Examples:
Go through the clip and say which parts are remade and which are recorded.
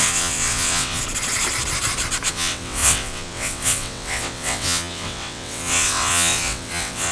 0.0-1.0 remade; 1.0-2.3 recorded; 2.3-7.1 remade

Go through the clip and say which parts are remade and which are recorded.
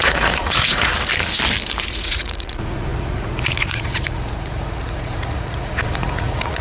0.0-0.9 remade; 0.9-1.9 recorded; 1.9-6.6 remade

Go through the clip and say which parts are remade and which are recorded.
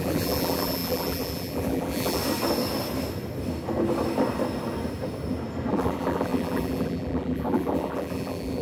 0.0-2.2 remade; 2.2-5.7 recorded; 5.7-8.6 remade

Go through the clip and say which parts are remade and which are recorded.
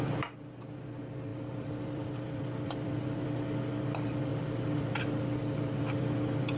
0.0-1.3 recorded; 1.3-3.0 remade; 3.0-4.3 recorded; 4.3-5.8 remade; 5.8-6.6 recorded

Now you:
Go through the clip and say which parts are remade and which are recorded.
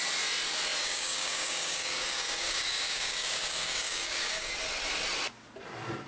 0.0-0.8 recorded; 0.8-4.5 remade; 4.5-6.1 recorded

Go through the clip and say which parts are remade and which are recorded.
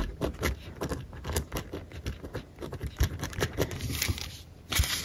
0.0-0.9 remade; 0.9-2.8 recorded; 2.8-4.4 remade; 4.4-5.0 recorded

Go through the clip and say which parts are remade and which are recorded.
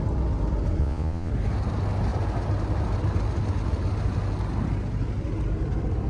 0.0-0.8 recorded; 0.8-1.3 remade; 1.3-6.1 recorded